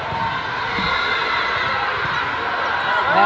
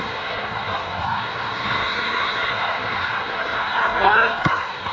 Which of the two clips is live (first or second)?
first